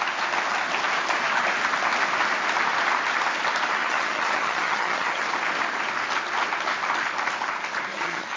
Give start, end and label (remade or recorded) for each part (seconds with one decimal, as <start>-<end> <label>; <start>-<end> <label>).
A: 0.0-3.8 recorded; 3.8-5.2 remade; 5.2-7.9 recorded; 7.9-8.4 remade